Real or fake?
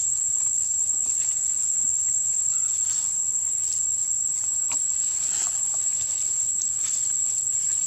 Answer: real